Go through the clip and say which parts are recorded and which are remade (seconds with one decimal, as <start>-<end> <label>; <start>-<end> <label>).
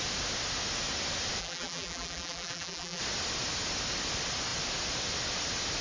0.0-1.4 recorded; 1.4-3.0 remade; 3.0-5.8 recorded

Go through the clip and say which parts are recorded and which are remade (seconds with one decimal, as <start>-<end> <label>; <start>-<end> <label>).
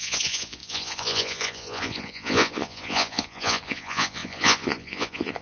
0.0-5.4 remade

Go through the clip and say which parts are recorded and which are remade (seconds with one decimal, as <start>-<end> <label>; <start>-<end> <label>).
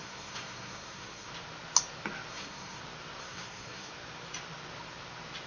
0.0-1.3 remade; 1.3-2.3 recorded; 2.3-2.8 remade; 2.8-3.2 recorded; 3.2-3.9 remade; 3.9-5.5 recorded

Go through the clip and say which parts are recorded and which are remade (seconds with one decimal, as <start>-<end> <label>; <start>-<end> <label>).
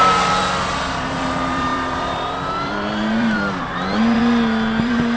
0.0-0.4 remade; 0.4-0.9 recorded; 0.9-4.2 remade; 4.2-4.8 recorded; 4.8-5.2 remade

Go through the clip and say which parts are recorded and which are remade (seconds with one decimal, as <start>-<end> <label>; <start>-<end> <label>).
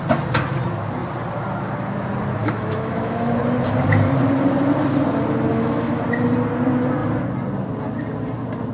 0.0-2.4 recorded; 2.4-3.4 remade; 3.4-5.5 recorded; 5.5-6.0 remade; 6.0-8.7 recorded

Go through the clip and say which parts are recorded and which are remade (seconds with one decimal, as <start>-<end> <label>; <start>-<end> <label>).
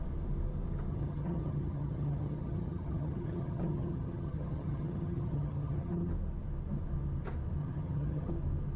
0.0-0.9 recorded; 0.9-6.1 remade; 6.1-7.6 recorded; 7.6-8.3 remade; 8.3-8.8 recorded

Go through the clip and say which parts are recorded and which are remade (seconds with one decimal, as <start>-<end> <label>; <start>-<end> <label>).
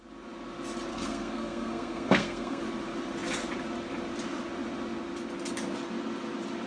0.0-0.9 recorded; 0.9-2.6 remade; 2.6-6.7 recorded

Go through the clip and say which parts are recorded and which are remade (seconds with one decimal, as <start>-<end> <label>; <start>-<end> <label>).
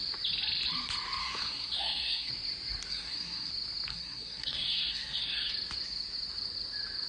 0.0-1.2 recorded; 1.2-2.3 remade; 2.3-2.9 recorded; 2.9-3.5 remade; 3.5-3.9 recorded; 3.9-5.5 remade; 5.5-7.1 recorded